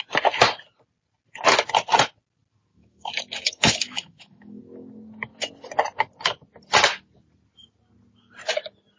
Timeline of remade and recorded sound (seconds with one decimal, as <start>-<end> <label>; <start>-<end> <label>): 0.0-2.7 recorded; 2.7-4.6 remade; 4.6-9.0 recorded